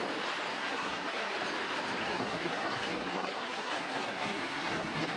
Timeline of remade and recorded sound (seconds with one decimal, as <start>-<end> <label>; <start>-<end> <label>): 0.0-0.5 recorded; 0.5-1.3 remade; 1.3-2.0 recorded; 2.0-5.2 remade